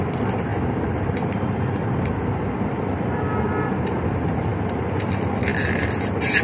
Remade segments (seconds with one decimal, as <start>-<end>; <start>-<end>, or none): none